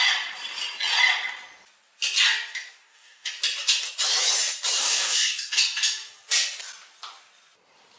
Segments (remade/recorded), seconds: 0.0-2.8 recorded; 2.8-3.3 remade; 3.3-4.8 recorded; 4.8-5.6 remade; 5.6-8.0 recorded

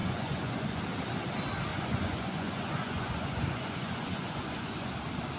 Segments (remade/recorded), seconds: 0.0-0.8 remade; 0.8-1.7 recorded; 1.7-4.9 remade; 4.9-5.4 recorded